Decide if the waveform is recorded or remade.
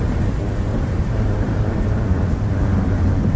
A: remade